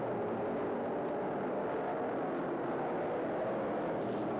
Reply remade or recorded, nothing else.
recorded